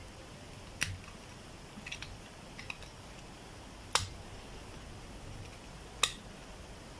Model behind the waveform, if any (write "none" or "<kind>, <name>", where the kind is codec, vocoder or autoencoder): none